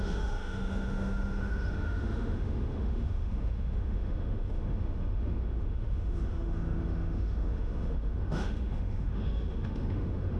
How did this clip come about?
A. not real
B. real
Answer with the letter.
A